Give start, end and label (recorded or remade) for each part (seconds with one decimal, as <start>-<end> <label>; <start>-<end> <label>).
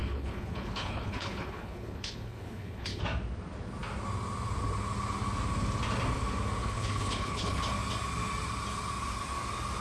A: 0.0-3.0 remade; 3.0-6.6 recorded; 6.6-7.6 remade; 7.6-9.8 recorded